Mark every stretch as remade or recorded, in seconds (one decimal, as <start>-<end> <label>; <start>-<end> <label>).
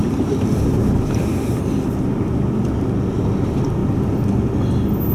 0.0-5.1 recorded